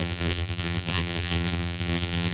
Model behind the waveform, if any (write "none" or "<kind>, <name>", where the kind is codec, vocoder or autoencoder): vocoder, BigVGAN v2